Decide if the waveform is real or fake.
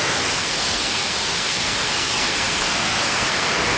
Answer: fake